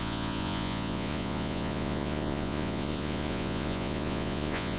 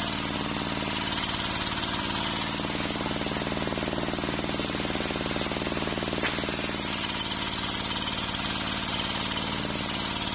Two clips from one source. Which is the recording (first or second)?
second